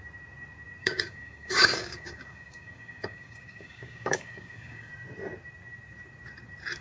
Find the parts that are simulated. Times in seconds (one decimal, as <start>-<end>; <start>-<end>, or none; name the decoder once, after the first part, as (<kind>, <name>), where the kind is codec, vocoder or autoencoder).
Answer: 0.8-4.9 (codec, DAC)